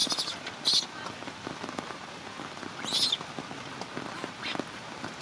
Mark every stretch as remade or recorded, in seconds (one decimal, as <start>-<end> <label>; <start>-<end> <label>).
0.0-5.2 recorded